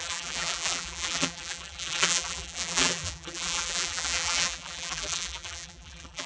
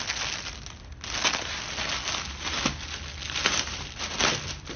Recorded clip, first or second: second